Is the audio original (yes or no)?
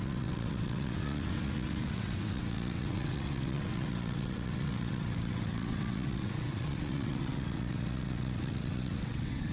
no